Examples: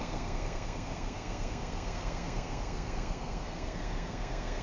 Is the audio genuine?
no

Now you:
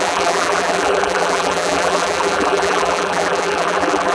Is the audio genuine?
no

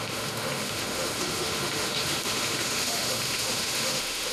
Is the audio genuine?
no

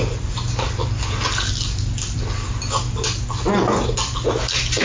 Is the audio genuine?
yes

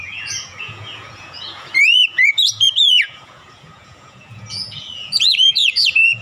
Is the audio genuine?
no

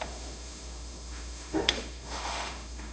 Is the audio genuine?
no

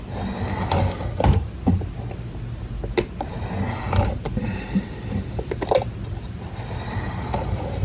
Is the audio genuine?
yes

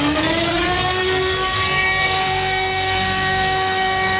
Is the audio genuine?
no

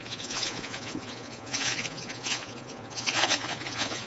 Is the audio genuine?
no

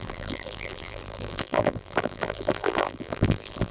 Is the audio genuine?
no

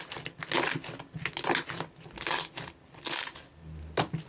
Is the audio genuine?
yes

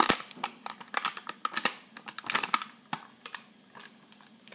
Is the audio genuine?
yes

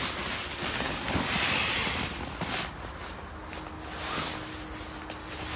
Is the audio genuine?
yes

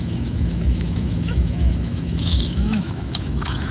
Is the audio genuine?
no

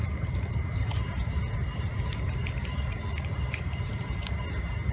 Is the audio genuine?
no